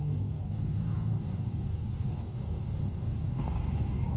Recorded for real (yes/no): no